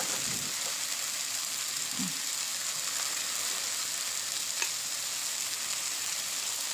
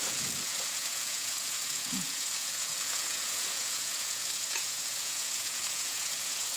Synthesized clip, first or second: second